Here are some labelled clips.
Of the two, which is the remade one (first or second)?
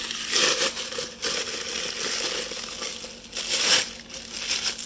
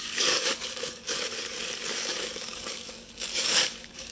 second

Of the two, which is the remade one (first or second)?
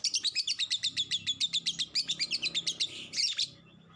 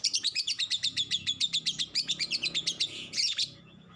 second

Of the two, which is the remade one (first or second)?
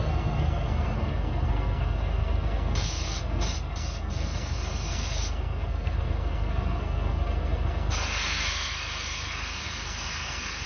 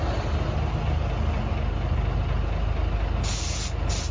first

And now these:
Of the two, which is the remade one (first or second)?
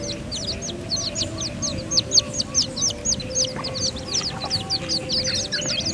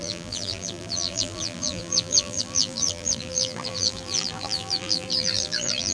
second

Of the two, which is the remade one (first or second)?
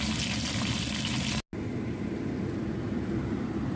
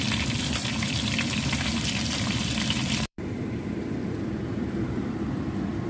second